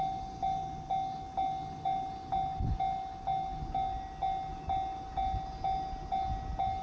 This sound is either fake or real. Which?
real